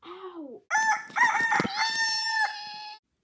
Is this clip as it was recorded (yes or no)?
yes